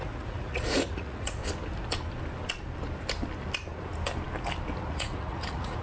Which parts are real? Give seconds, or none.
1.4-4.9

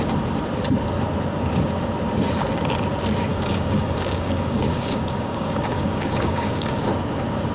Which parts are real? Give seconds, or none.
0.0-3.3; 6.8-7.5

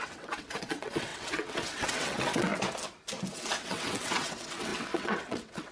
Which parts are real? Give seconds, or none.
2.5-3.3

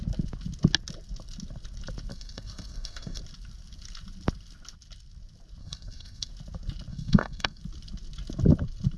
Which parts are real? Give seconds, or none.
0.0-2.1; 3.2-5.6; 6.3-6.9; 7.6-9.0